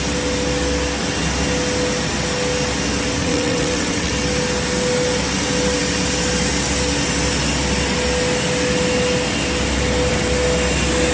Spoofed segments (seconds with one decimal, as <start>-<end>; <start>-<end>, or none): 3.2-4.1